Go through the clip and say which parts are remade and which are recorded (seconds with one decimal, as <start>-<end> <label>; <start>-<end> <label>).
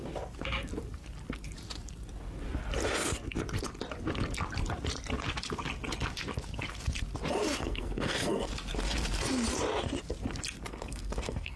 0.0-7.6 recorded; 7.6-8.5 remade; 8.5-10.7 recorded; 10.7-11.6 remade